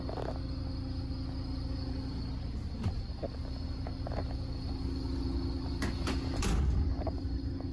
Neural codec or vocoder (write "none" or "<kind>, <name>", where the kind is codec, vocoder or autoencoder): none